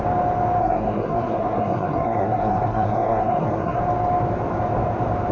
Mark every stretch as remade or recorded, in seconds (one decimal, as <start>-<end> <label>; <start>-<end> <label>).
0.0-0.6 recorded; 0.6-3.8 remade; 3.8-5.3 recorded